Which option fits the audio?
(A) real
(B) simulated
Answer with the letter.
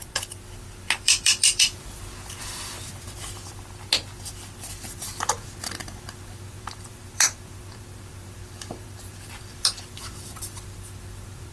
B